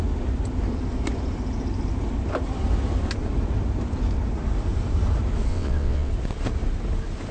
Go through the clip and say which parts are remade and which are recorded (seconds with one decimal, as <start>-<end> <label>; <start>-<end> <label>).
0.0-5.5 recorded; 5.5-6.1 remade; 6.1-7.3 recorded